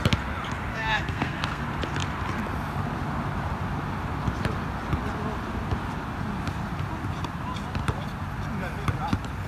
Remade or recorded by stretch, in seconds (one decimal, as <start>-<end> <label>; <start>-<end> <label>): 0.0-0.7 recorded; 0.7-1.6 remade; 1.6-9.5 recorded